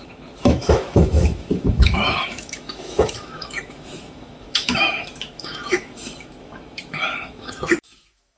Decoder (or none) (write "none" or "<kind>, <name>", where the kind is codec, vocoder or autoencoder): autoencoder, DAC-VAE